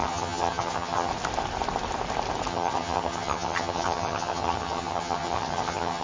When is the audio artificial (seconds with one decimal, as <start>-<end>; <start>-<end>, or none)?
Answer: 0.0-1.1; 2.5-6.0